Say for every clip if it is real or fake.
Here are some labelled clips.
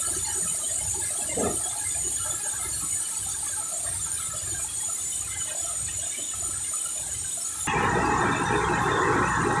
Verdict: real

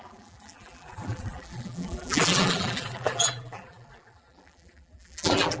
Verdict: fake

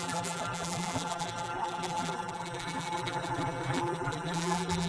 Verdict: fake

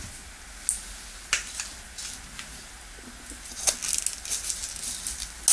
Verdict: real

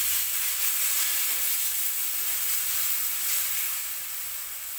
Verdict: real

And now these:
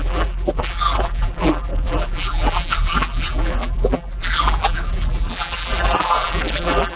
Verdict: fake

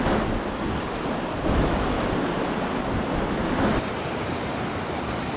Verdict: fake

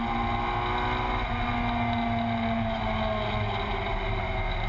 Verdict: real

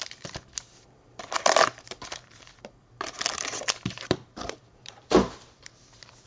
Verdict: fake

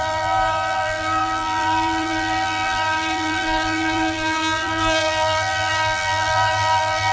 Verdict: fake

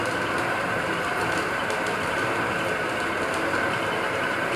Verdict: fake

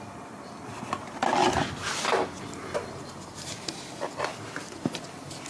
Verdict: real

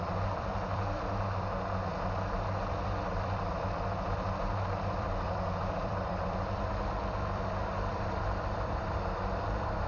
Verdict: fake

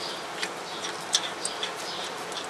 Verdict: real